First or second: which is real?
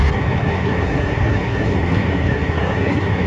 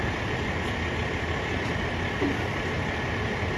second